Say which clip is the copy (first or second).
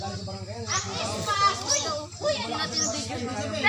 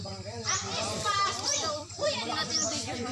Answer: second